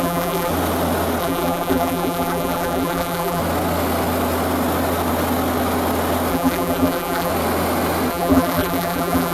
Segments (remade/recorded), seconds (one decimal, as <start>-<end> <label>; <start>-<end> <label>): 0.0-0.5 remade; 0.5-1.2 recorded; 1.2-3.4 remade; 3.4-6.3 recorded; 6.3-7.3 remade; 7.3-8.1 recorded; 8.1-9.3 remade